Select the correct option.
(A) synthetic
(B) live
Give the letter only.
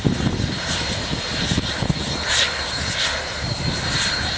B